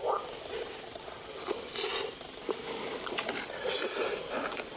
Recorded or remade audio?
recorded